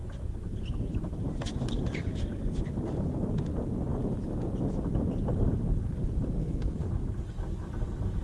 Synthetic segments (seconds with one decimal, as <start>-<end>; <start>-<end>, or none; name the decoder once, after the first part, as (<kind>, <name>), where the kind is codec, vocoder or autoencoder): 6.4-6.9 (codec, SNAC)